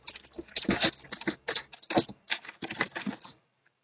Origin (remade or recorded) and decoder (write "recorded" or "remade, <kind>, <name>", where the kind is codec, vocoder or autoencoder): recorded